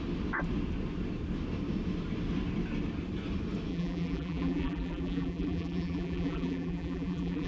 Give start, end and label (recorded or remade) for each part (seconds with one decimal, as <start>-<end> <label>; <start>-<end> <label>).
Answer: 0.0-3.7 recorded; 3.7-7.5 remade